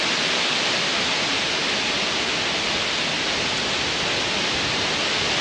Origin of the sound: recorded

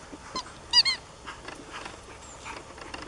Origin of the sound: recorded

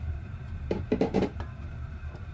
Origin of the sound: remade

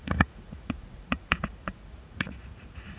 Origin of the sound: remade